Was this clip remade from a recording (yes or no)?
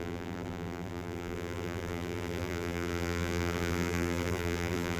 yes